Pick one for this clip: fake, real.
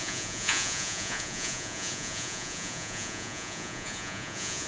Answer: fake